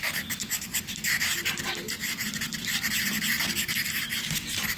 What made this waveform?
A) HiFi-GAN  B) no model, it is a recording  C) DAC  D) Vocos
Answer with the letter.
B